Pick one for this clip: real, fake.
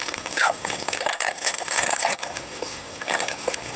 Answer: fake